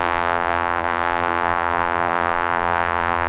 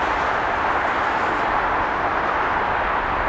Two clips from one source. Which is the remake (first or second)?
first